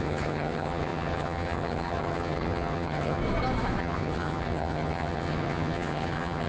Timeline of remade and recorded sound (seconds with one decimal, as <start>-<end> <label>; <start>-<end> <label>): 0.0-3.2 remade; 3.2-3.8 recorded; 3.8-6.5 remade